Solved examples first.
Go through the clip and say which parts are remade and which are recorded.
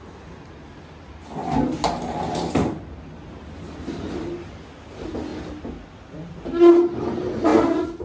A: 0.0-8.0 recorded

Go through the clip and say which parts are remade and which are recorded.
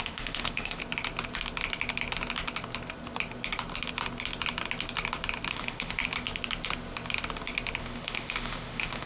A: 0.0-0.8 remade; 0.8-5.5 recorded; 5.5-6.0 remade; 6.0-7.8 recorded; 7.8-9.1 remade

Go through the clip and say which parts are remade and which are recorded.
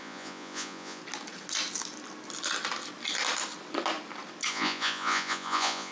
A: 0.0-1.0 remade; 1.0-4.5 recorded; 4.5-5.9 remade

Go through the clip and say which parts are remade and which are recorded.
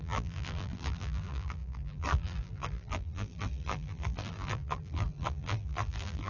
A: 0.0-6.3 remade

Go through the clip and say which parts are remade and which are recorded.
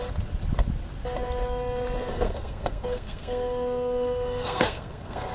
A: 0.0-2.1 recorded; 2.1-5.3 remade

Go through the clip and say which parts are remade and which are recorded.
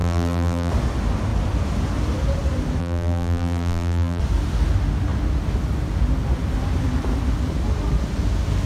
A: 0.0-0.7 remade; 0.7-2.8 recorded; 2.8-4.2 remade; 4.2-8.7 recorded